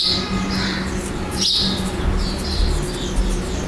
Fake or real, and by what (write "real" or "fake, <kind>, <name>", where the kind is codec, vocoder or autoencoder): real